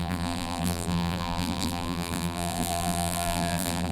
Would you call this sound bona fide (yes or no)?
no